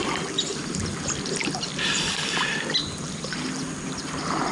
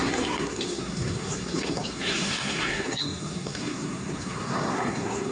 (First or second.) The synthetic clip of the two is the second